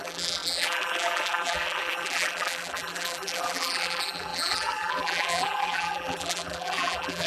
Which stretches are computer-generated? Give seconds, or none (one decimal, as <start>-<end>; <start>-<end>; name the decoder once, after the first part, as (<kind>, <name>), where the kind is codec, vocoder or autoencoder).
0.0-7.3 (vocoder, BigVGAN v2)